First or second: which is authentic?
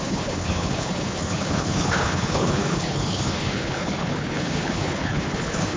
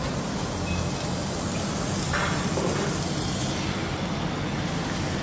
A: second